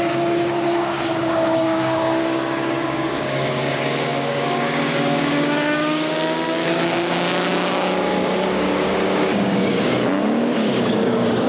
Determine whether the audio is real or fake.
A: fake